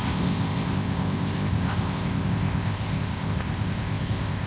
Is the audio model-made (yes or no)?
yes